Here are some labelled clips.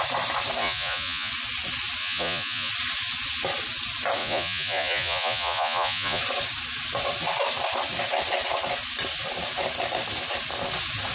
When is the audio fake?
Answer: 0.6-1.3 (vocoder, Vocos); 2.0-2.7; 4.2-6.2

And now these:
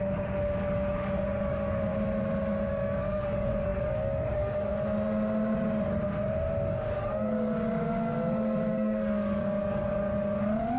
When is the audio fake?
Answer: 0.0-1.9 (codec, DAC); 2.7-4.7; 6.7-10.8